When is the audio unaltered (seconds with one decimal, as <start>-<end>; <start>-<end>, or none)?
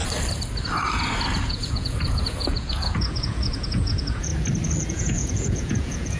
0.0-1.4; 4.3-4.8